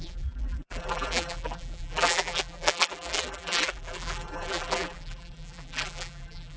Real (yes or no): no